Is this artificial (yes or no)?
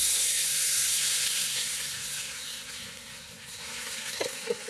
yes